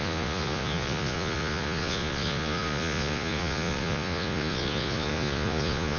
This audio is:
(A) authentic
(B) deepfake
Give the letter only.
B